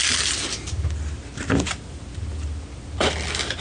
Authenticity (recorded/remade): recorded